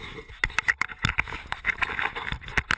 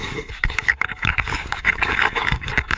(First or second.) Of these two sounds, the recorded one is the first